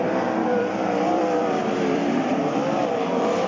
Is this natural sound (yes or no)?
no